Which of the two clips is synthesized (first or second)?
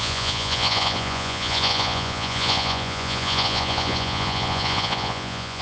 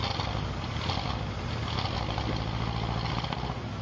first